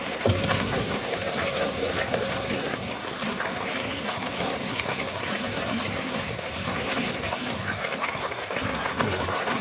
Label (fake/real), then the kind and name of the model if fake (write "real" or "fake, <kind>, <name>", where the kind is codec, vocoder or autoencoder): fake, codec, SNAC